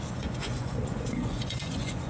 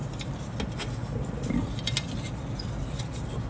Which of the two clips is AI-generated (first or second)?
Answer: first